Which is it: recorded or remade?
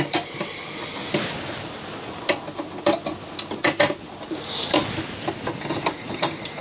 recorded